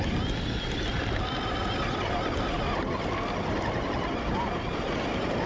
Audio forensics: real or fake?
real